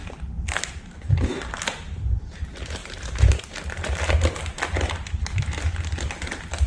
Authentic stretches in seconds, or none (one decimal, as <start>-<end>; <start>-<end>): 1.0-2.8; 4.0-6.7